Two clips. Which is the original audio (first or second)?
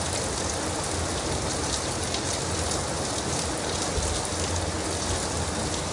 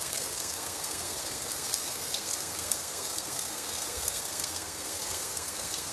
first